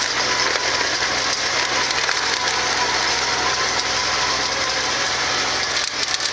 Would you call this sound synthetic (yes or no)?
no